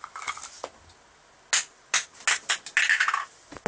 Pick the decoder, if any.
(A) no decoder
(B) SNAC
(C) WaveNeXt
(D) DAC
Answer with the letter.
A